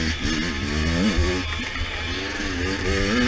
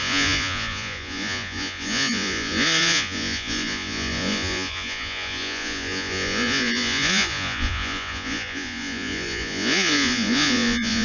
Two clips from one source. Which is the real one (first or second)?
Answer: first